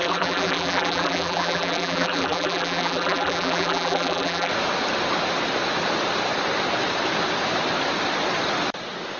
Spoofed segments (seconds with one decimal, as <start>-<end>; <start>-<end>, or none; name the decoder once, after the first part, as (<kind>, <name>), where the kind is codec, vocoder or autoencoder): 0.0-4.5 (vocoder, BigVGAN v2)